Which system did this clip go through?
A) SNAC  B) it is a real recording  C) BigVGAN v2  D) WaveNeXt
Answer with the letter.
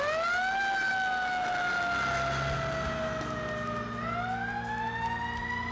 B